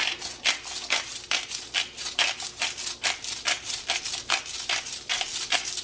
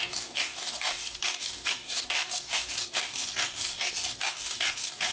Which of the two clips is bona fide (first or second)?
first